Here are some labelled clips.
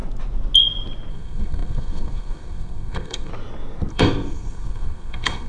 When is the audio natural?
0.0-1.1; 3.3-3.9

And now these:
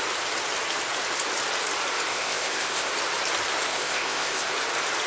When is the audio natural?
0.0-2.1; 2.9-3.7; 4.5-5.1

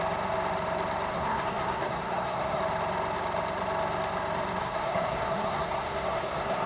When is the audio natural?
0.0-1.1; 2.6-4.6

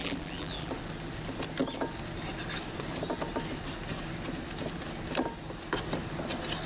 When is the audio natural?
0.7-6.7

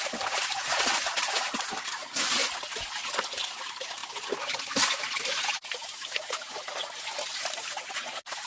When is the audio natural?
0.0-2.4; 3.1-8.5

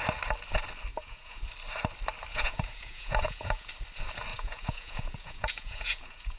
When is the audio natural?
0.0-0.9; 1.4-2.3; 3.7-4.3